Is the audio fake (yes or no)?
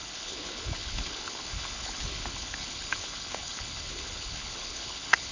yes